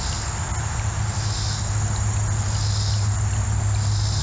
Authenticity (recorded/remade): recorded